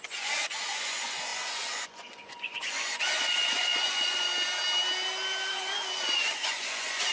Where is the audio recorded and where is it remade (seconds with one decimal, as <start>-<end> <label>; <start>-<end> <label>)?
0.0-4.3 remade; 4.3-5.5 recorded; 5.5-7.1 remade